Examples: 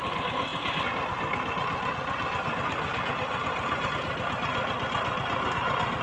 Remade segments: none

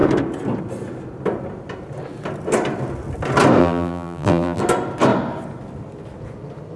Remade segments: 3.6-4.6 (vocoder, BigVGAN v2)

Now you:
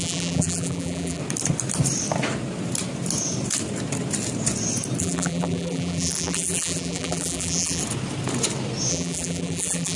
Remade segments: 0.0-1.2 (vocoder, BigVGAN v2); 5.0-7.8; 8.9-10.0

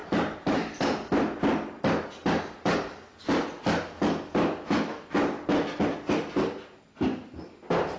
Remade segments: 0.0-1.1 (vocoder, BigVGAN v2)

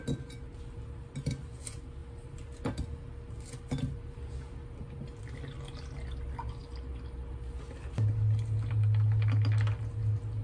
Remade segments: none

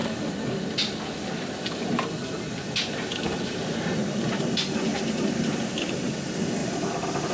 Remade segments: none